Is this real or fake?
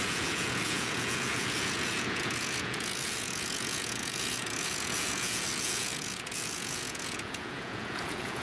fake